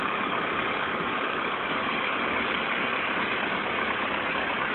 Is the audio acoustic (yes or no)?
no